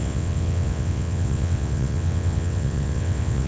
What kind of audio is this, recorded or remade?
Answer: remade